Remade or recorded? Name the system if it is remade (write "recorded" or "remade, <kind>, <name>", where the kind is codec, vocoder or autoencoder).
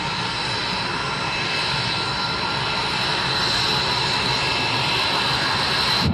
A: recorded